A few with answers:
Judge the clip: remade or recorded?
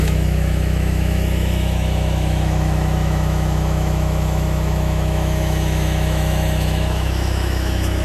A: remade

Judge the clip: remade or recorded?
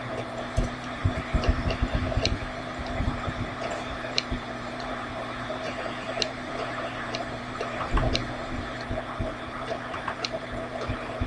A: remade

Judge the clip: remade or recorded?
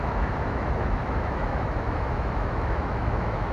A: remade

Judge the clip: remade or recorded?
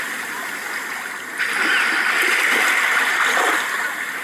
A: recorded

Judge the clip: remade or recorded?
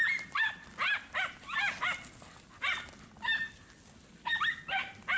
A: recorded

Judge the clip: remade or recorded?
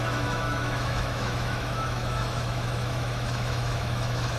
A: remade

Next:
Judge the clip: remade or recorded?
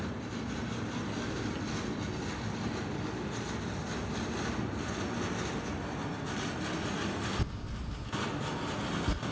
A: recorded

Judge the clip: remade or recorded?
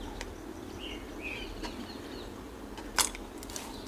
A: recorded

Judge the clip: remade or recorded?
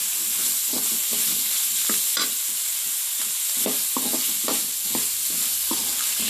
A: recorded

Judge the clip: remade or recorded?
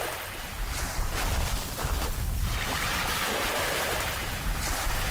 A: recorded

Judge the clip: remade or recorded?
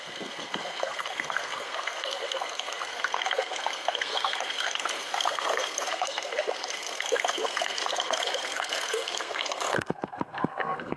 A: remade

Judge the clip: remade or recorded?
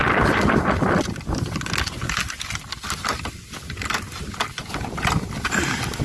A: recorded